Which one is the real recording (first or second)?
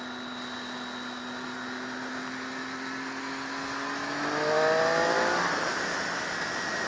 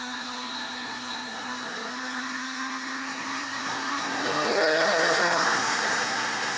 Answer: first